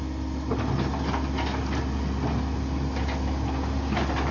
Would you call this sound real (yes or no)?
yes